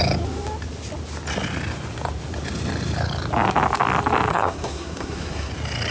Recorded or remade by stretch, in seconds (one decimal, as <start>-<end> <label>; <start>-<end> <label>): 0.0-4.3 recorded; 4.3-5.5 remade; 5.5-5.9 recorded